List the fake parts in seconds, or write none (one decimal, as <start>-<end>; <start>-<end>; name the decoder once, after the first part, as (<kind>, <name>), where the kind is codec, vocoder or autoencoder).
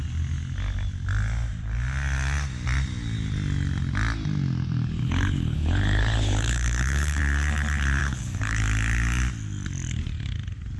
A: 5.0-7.2 (codec, HILCodec); 8.0-8.6